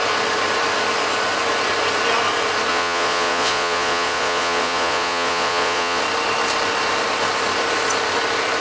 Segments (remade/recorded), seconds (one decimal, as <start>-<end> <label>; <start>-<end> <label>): 0.0-2.7 recorded; 2.7-6.0 remade; 6.0-8.6 recorded